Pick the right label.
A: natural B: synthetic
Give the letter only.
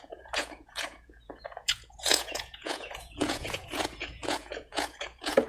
B